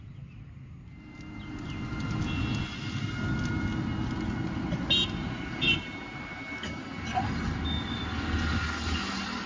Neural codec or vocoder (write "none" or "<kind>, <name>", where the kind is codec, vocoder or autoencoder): none